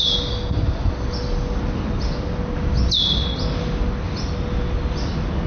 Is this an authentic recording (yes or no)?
yes